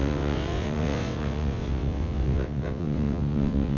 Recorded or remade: remade